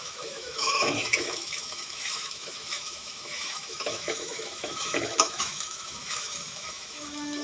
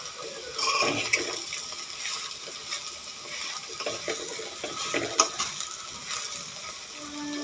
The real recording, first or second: second